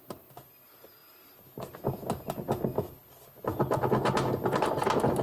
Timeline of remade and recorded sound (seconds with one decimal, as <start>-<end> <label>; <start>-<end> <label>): 0.0-5.2 recorded